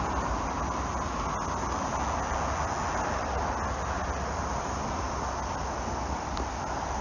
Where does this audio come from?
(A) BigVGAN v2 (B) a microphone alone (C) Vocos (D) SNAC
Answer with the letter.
B